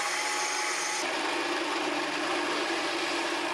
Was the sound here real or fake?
real